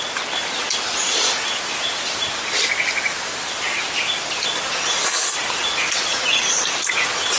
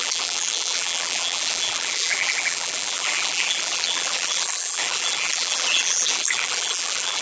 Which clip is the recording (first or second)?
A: first